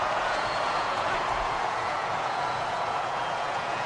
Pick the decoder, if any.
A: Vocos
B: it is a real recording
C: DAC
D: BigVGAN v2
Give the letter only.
A